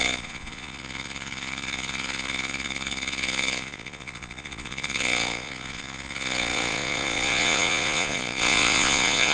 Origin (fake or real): fake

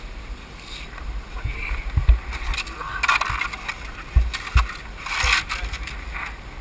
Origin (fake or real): real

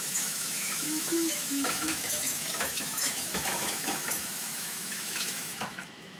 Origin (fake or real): fake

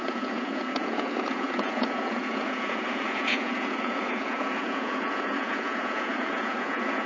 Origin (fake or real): fake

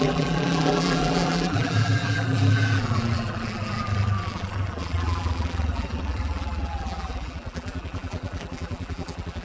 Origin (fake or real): fake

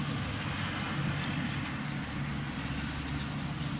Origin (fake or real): real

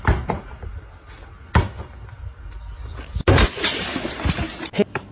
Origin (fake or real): real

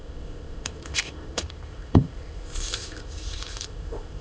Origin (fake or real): fake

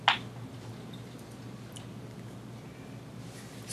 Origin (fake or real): real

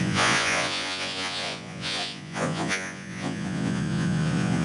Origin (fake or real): fake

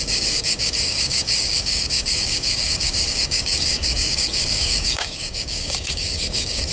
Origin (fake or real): fake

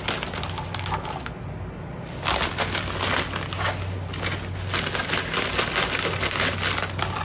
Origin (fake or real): real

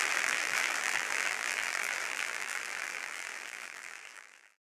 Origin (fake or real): fake